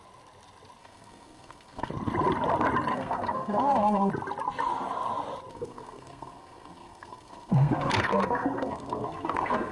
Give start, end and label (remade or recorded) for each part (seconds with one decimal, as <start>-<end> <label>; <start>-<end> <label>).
0.0-0.8 recorded; 0.8-1.9 remade; 1.9-2.9 recorded; 2.9-4.1 remade; 4.1-5.5 recorded; 5.5-9.7 remade